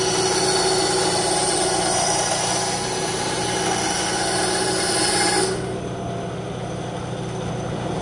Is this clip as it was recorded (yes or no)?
yes